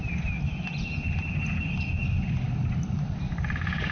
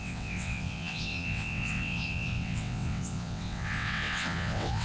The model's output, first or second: second